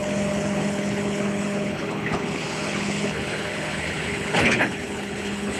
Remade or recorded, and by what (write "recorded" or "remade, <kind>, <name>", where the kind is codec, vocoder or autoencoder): remade, codec, HILCodec